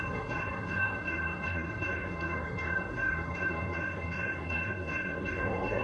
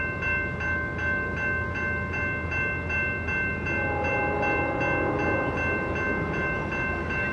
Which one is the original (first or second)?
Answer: second